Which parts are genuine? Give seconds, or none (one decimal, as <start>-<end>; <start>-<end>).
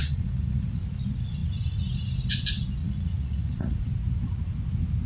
0.8-2.8; 3.9-5.1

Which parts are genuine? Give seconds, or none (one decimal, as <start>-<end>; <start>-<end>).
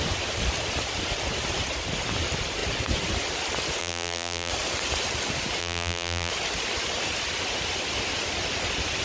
0.0-3.8; 4.5-5.6; 6.3-9.0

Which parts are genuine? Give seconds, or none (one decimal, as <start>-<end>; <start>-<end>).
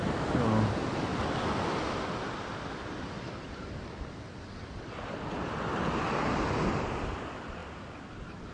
0.0-8.5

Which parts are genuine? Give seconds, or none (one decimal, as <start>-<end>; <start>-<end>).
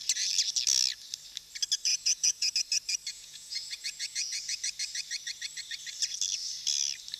0.0-1.9; 2.5-3.1; 4.6-7.2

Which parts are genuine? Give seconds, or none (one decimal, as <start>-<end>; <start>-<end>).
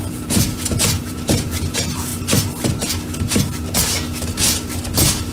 2.1-5.3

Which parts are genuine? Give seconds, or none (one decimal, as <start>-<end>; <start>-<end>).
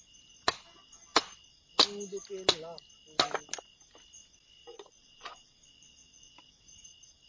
0.0-4.6; 6.5-7.3